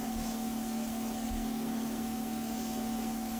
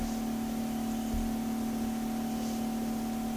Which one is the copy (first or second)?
first